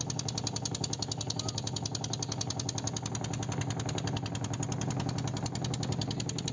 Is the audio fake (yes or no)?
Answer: no